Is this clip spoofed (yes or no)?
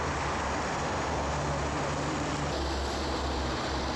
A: no